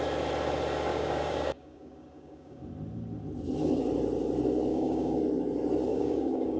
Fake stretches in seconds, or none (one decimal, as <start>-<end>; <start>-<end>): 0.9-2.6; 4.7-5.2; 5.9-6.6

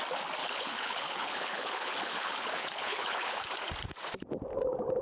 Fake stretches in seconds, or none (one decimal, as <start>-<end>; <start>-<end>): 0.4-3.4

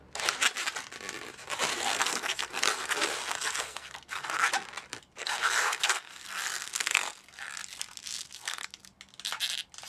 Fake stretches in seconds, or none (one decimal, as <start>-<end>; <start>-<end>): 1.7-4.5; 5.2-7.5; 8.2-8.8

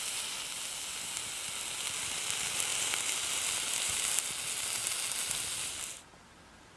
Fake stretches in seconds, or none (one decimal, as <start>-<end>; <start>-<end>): none

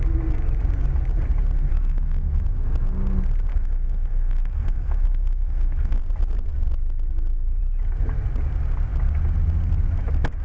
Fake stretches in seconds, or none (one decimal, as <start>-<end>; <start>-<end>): 1.7-2.4; 3.5-6.0

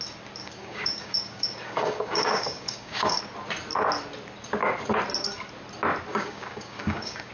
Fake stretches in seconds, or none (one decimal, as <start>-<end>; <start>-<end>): 0.4-3.2; 6.1-7.3